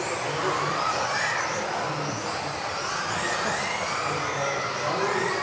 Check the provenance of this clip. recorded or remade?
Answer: recorded